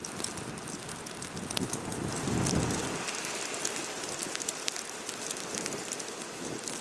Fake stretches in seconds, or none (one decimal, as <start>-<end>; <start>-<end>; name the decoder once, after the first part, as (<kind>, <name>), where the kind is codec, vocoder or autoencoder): none